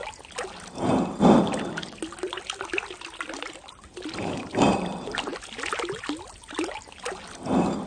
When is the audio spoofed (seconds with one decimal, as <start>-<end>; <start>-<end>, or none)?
none